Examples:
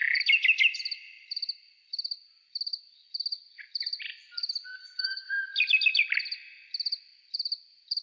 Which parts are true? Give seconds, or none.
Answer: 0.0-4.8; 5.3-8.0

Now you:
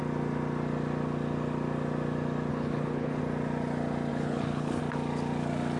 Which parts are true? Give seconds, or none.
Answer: 0.0-2.5; 3.2-4.1; 4.8-5.8

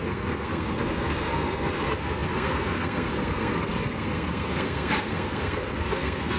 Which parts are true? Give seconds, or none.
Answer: none

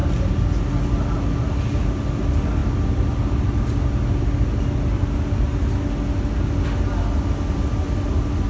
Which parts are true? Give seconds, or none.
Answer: 0.0-8.5

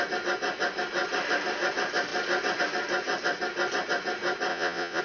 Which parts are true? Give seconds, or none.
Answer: 0.0-4.5

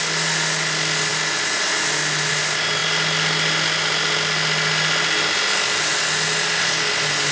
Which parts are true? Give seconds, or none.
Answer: 0.0-7.3